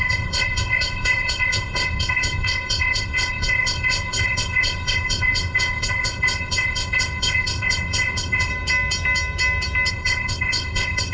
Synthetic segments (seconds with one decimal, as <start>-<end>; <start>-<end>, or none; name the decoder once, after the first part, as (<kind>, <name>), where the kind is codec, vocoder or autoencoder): 0.0-8.5 (codec, ZipCodec); 9.9-11.1